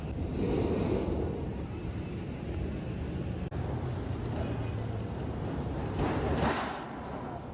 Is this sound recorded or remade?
recorded